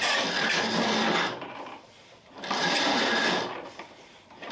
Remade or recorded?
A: remade